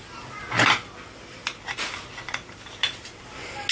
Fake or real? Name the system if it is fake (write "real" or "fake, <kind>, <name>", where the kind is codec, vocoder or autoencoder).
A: real